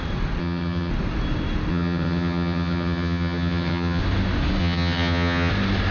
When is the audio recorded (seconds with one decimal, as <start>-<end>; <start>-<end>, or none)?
0.0-0.4; 0.9-1.7; 4.0-4.6; 5.5-5.9